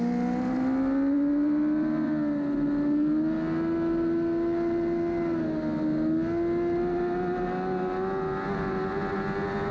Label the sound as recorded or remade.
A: recorded